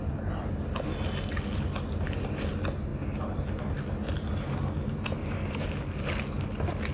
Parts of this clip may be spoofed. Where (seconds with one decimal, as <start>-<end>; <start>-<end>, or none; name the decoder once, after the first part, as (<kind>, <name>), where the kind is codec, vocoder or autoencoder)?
none